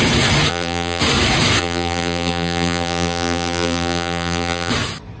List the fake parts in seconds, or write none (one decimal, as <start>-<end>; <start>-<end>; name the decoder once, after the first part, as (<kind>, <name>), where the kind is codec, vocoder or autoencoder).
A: 0.5-1.0 (vocoder, BigVGAN v2); 1.6-4.7